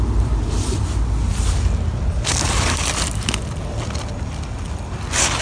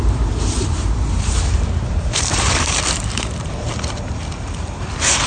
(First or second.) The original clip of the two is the first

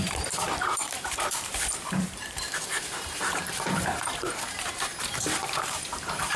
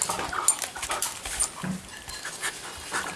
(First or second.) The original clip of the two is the second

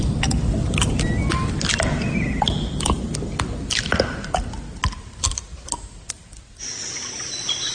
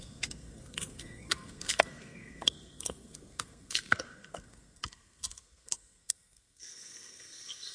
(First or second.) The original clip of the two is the first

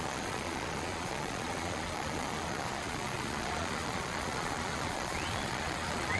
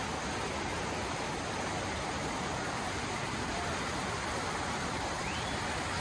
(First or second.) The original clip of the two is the second